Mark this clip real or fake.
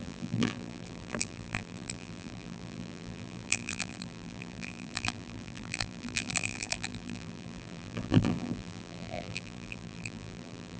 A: fake